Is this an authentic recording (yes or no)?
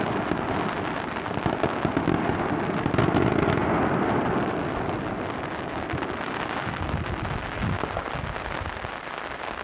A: yes